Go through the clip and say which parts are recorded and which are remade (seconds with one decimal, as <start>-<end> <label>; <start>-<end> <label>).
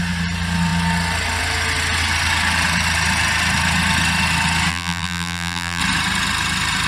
0.0-4.7 recorded; 4.7-5.8 remade; 5.8-6.9 recorded